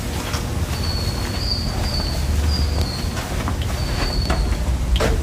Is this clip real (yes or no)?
yes